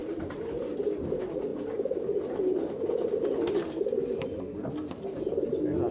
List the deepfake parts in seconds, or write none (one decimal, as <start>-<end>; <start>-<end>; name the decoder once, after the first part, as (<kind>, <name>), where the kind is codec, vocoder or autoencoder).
none